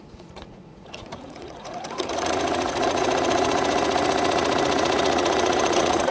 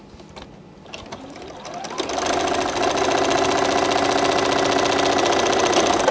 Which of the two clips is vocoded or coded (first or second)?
first